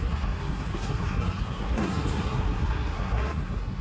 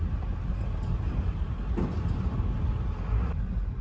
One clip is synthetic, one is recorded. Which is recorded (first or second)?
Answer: second